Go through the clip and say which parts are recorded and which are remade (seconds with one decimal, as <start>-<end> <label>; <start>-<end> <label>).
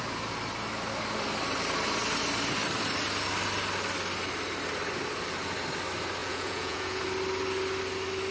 0.0-6.2 recorded; 6.2-7.0 remade; 7.0-8.3 recorded